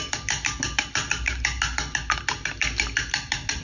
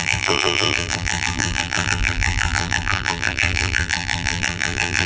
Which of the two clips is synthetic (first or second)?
second